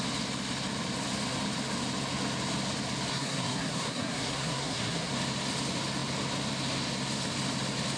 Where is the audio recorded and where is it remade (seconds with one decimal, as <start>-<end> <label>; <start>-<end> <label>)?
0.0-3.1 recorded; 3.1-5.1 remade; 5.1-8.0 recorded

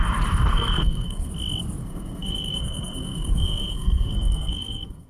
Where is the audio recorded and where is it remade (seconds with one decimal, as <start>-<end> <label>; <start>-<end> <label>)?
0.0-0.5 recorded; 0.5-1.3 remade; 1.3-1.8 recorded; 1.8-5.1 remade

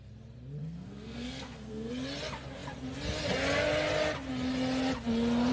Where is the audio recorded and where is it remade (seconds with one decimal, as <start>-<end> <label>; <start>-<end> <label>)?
0.0-0.6 recorded; 0.6-1.9 remade; 1.9-5.5 recorded

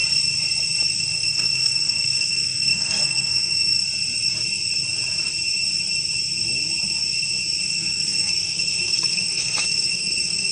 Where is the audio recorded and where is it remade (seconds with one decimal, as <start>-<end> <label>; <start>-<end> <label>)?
0.0-1.0 recorded; 1.0-3.8 remade; 3.8-7.6 recorded; 7.6-10.5 remade